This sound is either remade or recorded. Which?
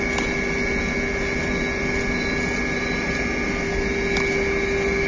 recorded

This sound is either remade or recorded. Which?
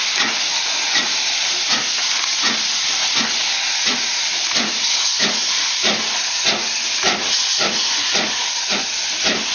recorded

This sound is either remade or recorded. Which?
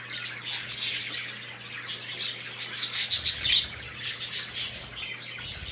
recorded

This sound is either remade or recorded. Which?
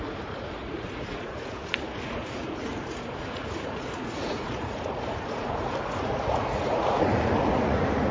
remade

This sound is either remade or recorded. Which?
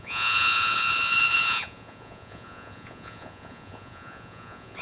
remade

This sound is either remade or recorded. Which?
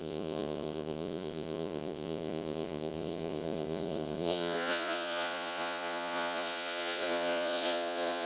remade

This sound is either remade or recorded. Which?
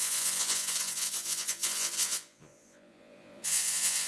remade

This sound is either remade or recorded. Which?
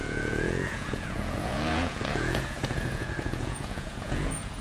remade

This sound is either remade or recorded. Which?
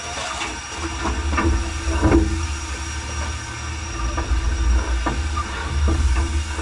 recorded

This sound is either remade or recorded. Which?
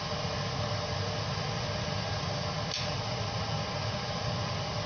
recorded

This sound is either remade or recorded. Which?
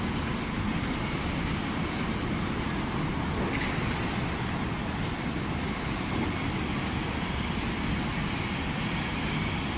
recorded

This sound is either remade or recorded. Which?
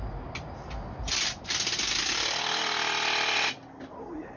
recorded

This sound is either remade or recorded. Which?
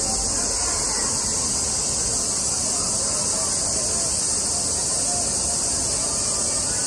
recorded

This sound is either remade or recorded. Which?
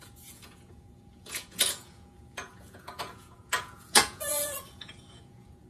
remade